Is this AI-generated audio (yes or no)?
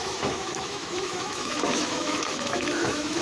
yes